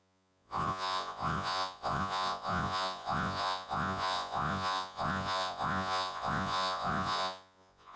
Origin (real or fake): fake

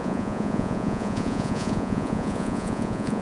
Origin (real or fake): fake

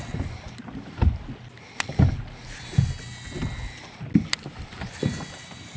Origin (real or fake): real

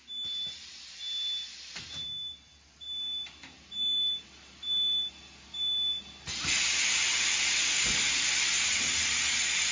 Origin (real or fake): real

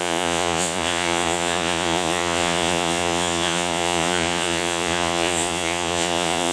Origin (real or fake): fake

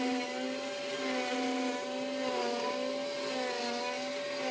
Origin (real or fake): real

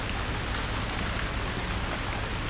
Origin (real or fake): real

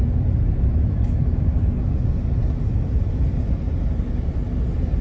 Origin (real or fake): real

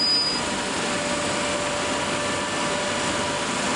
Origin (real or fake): real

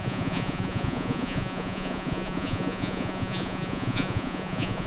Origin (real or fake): fake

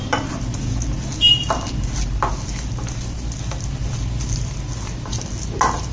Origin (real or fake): real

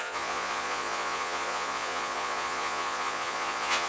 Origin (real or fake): fake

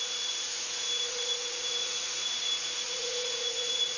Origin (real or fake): fake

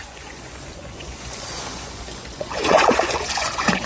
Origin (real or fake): fake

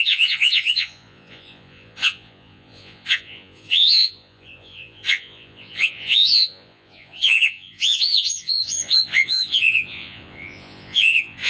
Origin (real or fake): fake